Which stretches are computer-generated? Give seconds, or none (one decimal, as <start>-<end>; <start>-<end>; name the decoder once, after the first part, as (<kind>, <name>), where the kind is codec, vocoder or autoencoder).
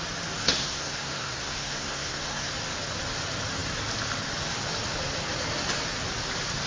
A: 0.4-2.5 (codec, SNAC)